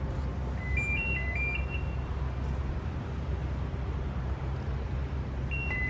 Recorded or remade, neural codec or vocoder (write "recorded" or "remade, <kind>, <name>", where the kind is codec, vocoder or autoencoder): recorded